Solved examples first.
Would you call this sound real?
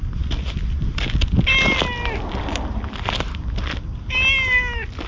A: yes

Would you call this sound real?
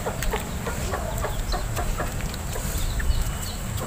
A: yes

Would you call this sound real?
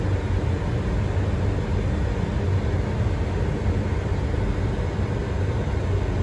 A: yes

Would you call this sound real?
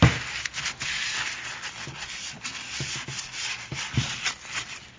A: yes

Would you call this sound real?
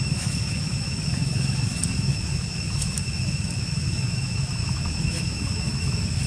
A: no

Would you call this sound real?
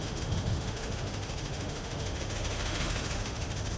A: no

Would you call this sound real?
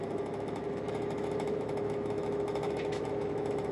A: no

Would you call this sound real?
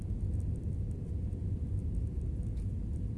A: yes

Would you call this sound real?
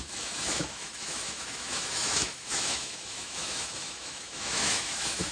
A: no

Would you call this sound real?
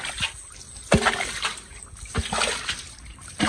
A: yes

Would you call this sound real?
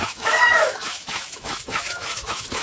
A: no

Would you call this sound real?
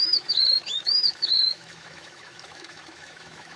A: no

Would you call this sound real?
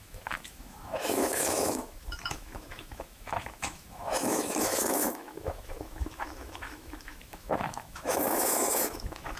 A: no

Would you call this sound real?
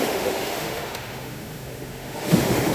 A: no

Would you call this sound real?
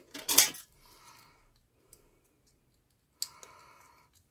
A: yes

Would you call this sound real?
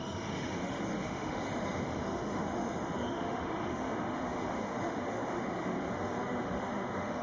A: no